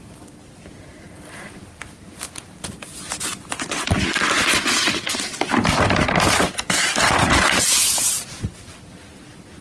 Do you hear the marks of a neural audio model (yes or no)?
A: no